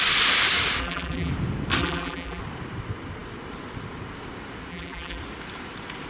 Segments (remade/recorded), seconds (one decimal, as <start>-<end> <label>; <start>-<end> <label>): 0.0-0.8 recorded; 0.8-1.3 remade; 1.3-1.8 recorded; 1.8-2.4 remade; 2.4-4.7 recorded; 4.7-5.2 remade; 5.2-6.1 recorded